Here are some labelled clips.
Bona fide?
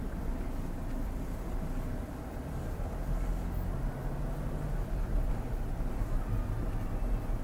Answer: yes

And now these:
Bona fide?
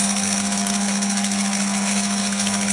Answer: no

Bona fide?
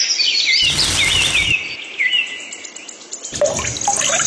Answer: yes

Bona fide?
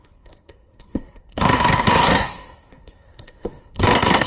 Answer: no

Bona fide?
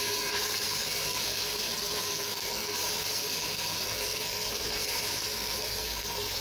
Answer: no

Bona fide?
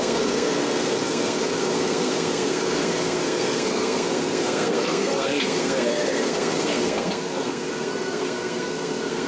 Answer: no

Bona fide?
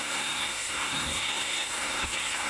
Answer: no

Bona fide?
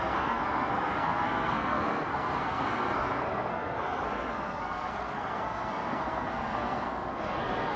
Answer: no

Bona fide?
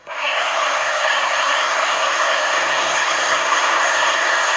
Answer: no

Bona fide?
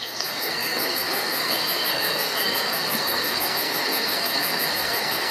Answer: no